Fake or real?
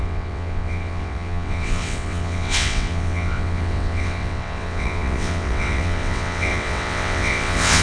fake